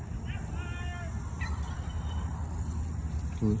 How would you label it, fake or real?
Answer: real